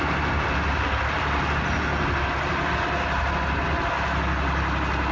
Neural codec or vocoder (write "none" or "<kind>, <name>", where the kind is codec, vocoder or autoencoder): none